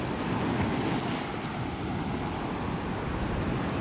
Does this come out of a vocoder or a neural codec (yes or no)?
no